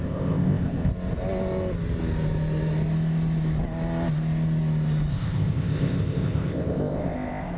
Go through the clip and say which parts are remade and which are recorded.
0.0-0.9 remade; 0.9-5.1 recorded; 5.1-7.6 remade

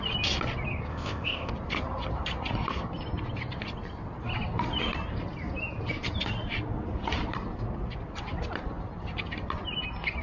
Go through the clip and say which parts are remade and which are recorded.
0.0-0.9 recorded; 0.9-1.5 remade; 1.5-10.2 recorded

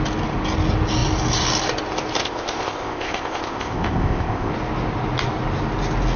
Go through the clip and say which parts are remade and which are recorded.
0.0-2.2 recorded; 2.2-4.5 remade; 4.5-6.2 recorded

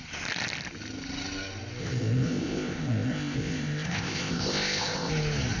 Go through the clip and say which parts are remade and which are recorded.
0.0-1.8 recorded; 1.8-5.1 remade; 5.1-5.6 recorded

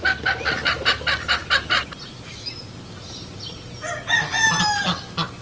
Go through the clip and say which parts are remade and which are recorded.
0.0-5.4 recorded

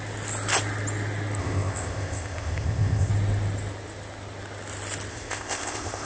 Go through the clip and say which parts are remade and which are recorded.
0.0-1.4 recorded; 1.4-3.1 remade; 3.1-5.1 recorded; 5.1-6.1 remade